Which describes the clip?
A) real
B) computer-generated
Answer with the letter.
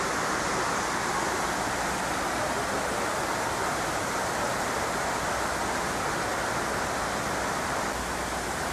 A